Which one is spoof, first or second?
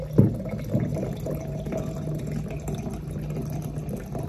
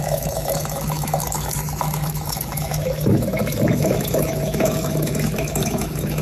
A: second